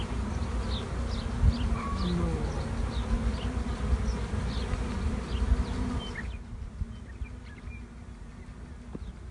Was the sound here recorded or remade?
recorded